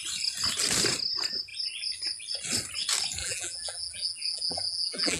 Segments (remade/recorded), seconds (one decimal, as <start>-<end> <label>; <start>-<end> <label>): 0.0-3.2 recorded; 3.2-5.2 remade